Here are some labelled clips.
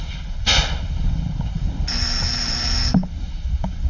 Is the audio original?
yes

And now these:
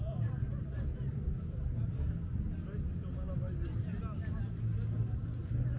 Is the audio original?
yes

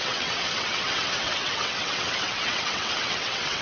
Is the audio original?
no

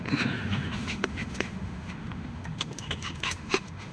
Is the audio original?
no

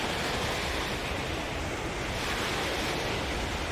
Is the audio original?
yes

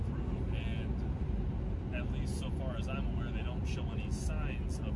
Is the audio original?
yes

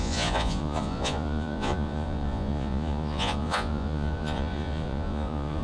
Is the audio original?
no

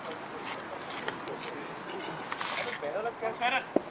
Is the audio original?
yes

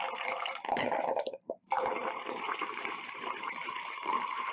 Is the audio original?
no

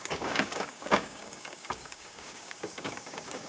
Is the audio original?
no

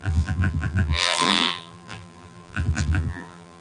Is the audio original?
no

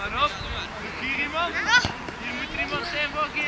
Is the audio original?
yes